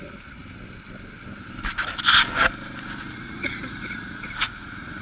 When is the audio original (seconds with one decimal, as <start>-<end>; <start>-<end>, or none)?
0.4-3.1